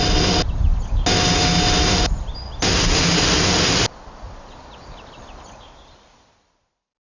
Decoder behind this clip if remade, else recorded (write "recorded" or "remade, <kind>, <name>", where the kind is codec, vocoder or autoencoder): recorded